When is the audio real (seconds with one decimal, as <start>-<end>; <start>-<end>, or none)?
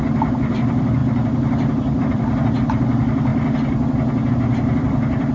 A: 3.3-4.3